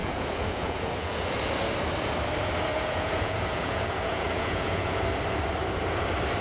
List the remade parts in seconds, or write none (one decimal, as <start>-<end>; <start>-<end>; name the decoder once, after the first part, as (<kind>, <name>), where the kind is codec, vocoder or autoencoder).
0.0-1.3 (vocoder, Vocos); 2.7-5.0